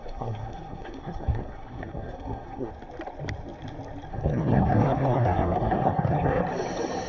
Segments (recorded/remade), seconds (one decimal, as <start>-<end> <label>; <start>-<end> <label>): 0.0-2.7 remade; 2.7-4.1 recorded; 4.1-6.4 remade; 6.4-7.1 recorded